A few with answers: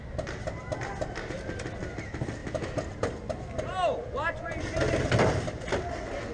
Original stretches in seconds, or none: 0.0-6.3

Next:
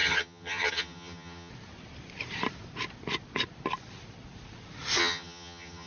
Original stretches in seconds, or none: 1.5-5.0

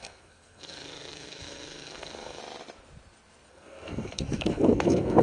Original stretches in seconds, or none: 2.4-3.5

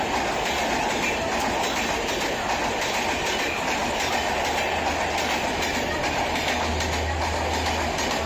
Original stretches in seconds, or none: 0.0-8.3

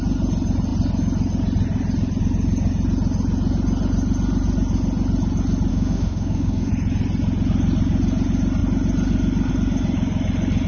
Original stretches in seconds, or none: 0.0-5.7; 6.7-10.7